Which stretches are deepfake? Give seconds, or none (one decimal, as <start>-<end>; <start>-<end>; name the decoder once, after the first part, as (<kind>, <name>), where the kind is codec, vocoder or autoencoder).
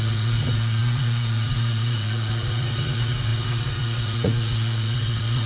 0.0-5.5 (vocoder, Vocos)